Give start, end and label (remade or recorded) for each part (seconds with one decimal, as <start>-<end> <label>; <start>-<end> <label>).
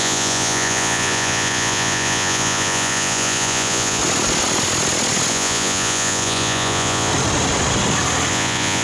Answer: 0.0-4.0 remade; 4.0-5.3 recorded; 5.3-7.1 remade; 7.1-8.3 recorded; 8.3-8.8 remade